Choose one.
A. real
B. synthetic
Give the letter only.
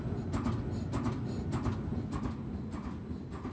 A